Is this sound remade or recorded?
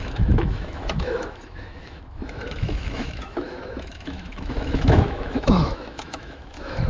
remade